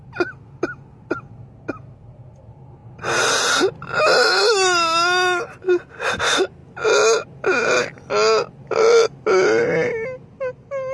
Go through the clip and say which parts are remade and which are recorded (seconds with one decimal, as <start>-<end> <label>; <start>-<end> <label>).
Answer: 0.0-10.9 recorded